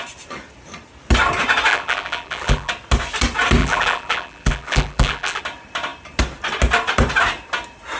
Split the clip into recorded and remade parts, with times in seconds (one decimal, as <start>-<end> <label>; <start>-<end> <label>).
0.0-1.7 recorded; 1.7-2.7 remade; 2.7-3.6 recorded; 3.6-5.4 remade; 5.4-8.0 recorded